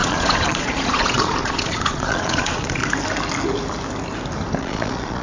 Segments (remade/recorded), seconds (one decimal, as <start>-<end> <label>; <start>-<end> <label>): 0.0-2.8 remade; 2.8-4.6 recorded; 4.6-5.2 remade